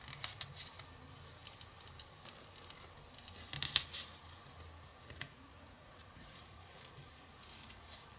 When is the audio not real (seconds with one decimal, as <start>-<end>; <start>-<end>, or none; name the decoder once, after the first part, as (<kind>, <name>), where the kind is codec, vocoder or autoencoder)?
4.9-8.2 (vocoder, Vocos)